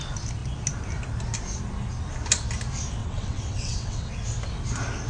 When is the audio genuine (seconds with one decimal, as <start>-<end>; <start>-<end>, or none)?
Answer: 0.0-3.0; 4.1-5.1